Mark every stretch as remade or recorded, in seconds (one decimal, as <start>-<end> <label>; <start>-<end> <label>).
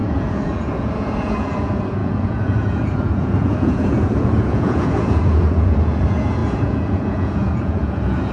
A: 0.0-8.3 remade